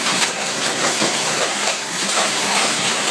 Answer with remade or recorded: remade